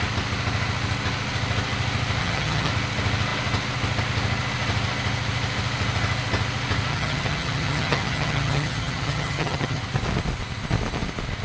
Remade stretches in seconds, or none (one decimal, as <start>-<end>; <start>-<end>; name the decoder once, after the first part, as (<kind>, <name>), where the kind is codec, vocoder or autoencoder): 2.2-2.7 (vocoder, HiFi-GAN); 6.9-9.8